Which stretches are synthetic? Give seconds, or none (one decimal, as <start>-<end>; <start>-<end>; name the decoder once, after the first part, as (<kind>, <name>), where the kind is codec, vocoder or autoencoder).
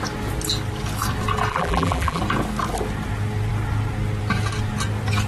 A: 1.5-2.2 (vocoder, BigVGAN v2)